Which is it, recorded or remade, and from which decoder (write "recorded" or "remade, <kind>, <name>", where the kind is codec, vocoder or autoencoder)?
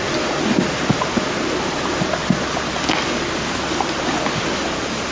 recorded